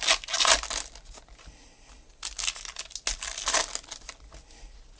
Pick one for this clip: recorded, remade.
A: recorded